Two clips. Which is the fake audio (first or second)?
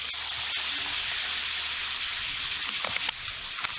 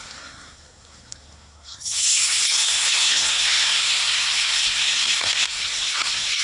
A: second